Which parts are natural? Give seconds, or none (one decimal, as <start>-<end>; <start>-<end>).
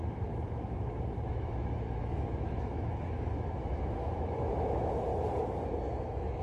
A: 5.1-6.0